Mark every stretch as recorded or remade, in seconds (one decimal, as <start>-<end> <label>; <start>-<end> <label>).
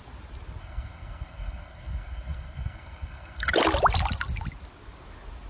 0.0-0.6 recorded; 0.6-3.5 remade; 3.5-5.5 recorded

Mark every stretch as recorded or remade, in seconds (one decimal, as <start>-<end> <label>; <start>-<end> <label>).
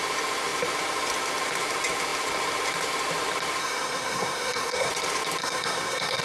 0.0-3.6 recorded; 3.6-4.9 remade; 4.9-5.4 recorded; 5.4-6.2 remade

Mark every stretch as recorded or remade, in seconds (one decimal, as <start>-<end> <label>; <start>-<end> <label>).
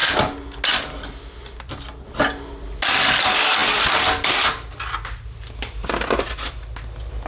0.0-7.3 recorded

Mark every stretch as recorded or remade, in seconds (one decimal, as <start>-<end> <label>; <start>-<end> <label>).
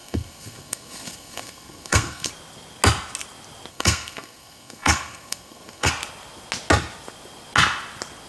0.0-2.3 remade; 2.3-3.7 recorded; 3.7-5.9 remade; 5.9-8.3 recorded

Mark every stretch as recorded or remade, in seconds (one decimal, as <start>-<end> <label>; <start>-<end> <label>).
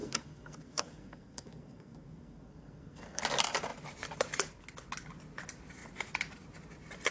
0.0-3.2 remade; 3.2-7.1 recorded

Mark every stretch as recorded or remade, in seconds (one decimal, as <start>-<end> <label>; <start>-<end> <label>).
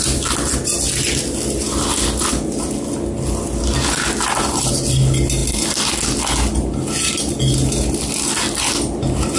0.0-9.4 recorded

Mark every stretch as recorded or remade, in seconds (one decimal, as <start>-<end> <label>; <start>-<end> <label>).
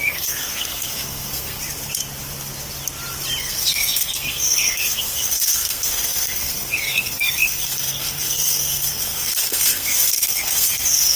0.0-1.6 remade; 1.6-3.4 recorded; 3.4-11.2 remade